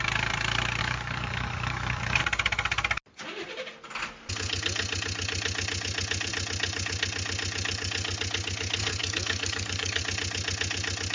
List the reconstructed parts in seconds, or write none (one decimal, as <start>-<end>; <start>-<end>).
0.8-2.2; 9.0-10.0